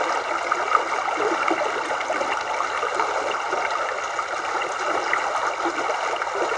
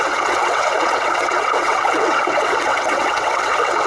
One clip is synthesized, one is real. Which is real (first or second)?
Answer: first